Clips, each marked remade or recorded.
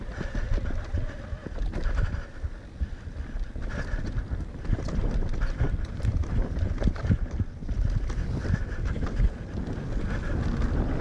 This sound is recorded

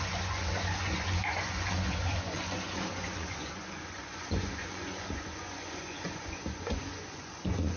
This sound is remade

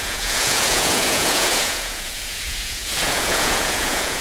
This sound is remade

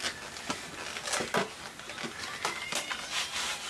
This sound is recorded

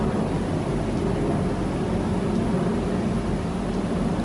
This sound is recorded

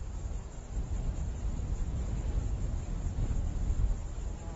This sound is remade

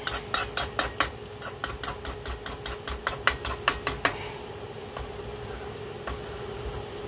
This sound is recorded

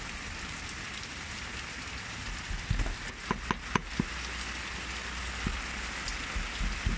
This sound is recorded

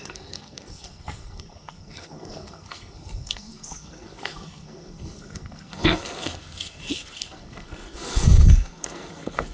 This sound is remade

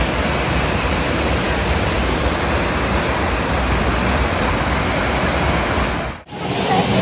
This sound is recorded